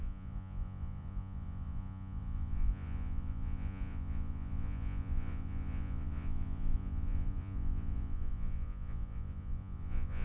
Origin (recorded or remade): remade